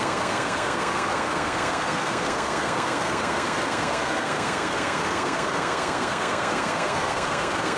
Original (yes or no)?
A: no